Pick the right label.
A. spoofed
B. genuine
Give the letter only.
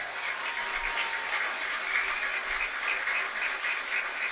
B